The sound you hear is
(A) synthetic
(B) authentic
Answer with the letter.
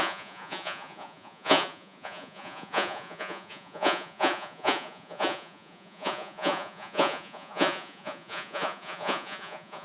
A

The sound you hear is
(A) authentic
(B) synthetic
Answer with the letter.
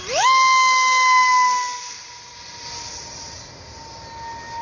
A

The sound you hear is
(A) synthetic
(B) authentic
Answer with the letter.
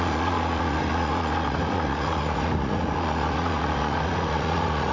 A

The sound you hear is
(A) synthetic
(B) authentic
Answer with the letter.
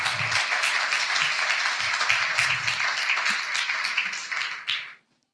B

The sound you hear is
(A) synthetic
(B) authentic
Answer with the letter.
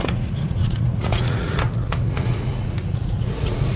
A